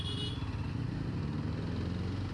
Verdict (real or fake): real